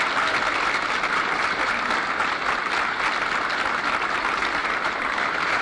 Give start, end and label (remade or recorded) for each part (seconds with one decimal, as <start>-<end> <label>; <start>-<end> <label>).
0.0-4.6 recorded; 4.6-5.6 remade